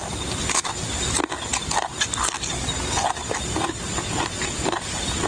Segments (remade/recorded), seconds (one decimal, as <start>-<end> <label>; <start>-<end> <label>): 0.0-5.3 recorded